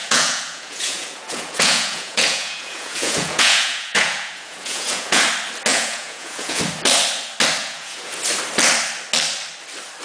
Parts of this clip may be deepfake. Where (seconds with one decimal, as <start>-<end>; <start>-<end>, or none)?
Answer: 0.0-5.2; 5.7-6.6; 7.6-8.2